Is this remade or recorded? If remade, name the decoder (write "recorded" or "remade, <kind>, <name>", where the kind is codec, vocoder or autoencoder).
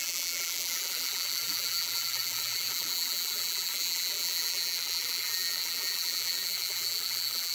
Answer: remade, vocoder, BigVGAN v2